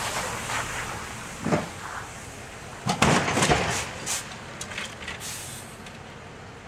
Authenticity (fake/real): real